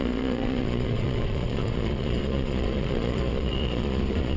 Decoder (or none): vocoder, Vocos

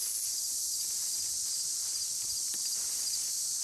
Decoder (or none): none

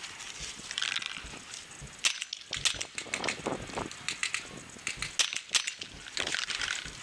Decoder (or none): none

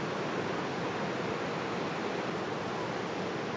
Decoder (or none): none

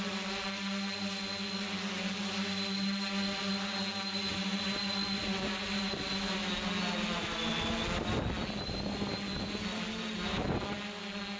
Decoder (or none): none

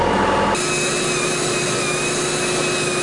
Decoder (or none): none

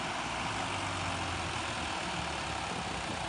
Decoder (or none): none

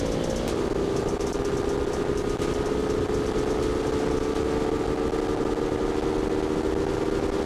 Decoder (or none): none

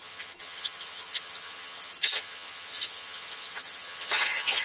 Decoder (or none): vocoder, HiFi-GAN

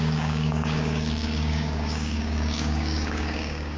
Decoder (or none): codec, DAC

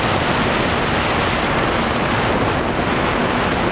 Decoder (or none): none